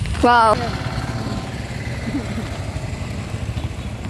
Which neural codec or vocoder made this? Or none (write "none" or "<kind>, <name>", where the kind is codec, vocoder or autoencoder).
none